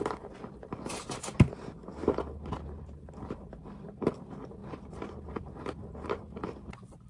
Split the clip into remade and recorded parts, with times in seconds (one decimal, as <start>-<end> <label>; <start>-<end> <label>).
0.0-2.0 remade; 2.0-2.8 recorded; 2.8-4.6 remade; 4.6-5.5 recorded; 5.5-7.1 remade